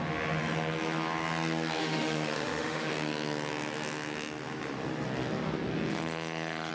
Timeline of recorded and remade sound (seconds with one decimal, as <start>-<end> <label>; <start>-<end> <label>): 0.0-1.8 recorded; 1.8-2.9 remade; 2.9-5.9 recorded; 5.9-6.7 remade